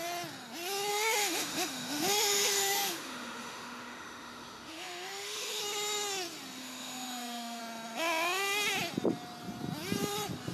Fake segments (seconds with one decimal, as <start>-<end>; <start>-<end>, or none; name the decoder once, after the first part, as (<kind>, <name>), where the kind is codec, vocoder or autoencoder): 0.9-5.6 (autoencoder, DAC-VAE); 6.6-7.6